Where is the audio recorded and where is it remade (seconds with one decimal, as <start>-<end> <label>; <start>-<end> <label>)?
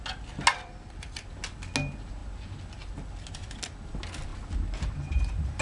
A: 0.0-0.5 recorded; 0.5-1.3 remade; 1.3-5.6 recorded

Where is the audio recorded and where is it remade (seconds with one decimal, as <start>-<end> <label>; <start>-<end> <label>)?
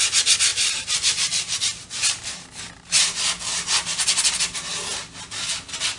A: 0.0-0.5 recorded; 0.5-2.6 remade; 2.6-6.0 recorded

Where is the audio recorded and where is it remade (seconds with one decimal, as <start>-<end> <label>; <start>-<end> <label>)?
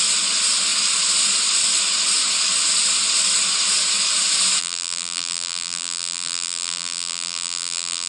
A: 0.0-4.6 recorded; 4.6-8.1 remade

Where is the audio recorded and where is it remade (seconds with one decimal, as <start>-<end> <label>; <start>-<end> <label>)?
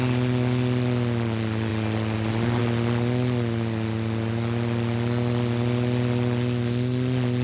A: 0.0-7.4 recorded